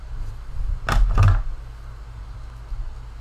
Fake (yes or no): no